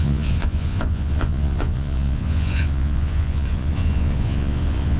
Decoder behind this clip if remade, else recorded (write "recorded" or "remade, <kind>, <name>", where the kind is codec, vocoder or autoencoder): remade, vocoder, Vocos